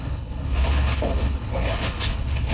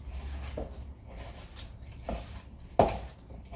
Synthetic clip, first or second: first